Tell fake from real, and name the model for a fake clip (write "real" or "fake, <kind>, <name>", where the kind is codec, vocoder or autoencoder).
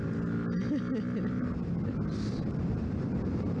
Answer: real